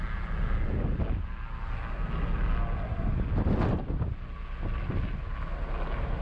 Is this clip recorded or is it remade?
recorded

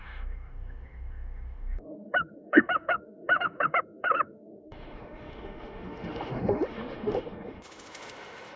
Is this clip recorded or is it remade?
remade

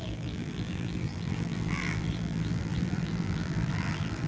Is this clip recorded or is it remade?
remade